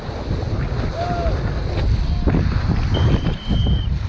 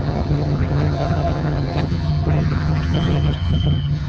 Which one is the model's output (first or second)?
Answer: second